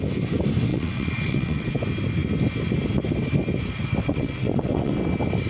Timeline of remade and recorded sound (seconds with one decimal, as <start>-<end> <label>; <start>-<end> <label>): 0.0-0.7 recorded; 0.7-1.8 remade; 1.8-4.0 recorded; 4.0-4.9 remade; 4.9-5.5 recorded